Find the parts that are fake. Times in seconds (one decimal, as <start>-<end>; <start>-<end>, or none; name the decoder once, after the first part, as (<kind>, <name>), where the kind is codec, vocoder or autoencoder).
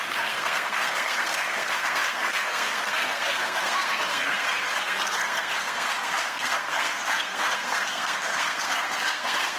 0.0-9.6 (codec, SNAC)